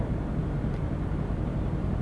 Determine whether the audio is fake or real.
fake